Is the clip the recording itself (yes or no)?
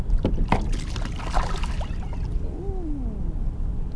yes